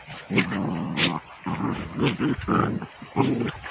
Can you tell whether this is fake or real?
real